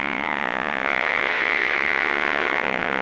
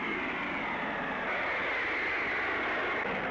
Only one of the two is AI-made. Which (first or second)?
first